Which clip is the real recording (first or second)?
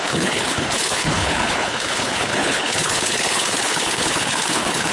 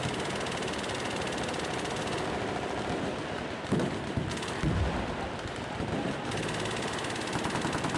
second